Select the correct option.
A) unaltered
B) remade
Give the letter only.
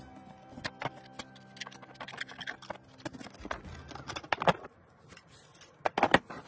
A